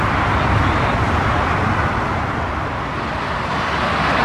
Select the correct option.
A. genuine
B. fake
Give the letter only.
A